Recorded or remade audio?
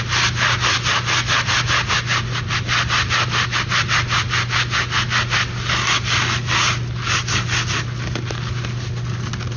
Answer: recorded